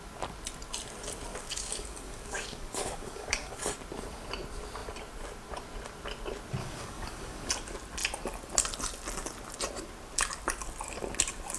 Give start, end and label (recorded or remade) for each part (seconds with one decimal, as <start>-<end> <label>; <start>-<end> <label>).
0.0-1.3 recorded; 1.3-3.7 remade; 3.7-6.6 recorded; 6.6-7.5 remade; 7.5-11.6 recorded